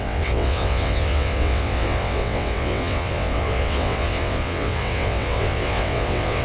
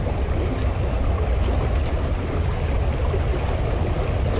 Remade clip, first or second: first